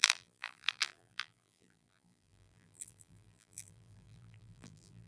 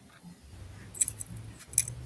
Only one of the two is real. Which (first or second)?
second